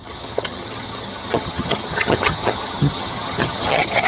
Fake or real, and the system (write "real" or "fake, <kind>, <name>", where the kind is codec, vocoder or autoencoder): fake, vocoder, HiFi-GAN